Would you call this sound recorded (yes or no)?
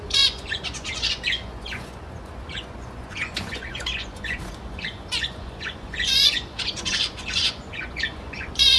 no